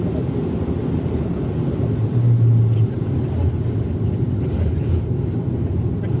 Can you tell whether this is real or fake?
real